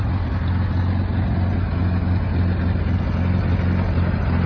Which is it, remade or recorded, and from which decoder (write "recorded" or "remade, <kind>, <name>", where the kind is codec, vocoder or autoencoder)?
recorded